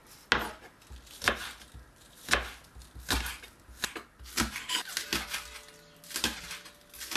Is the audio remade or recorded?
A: recorded